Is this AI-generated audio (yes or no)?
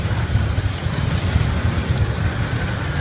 no